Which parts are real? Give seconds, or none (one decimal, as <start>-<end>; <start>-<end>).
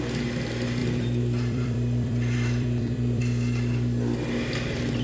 0.0-0.8; 3.2-5.0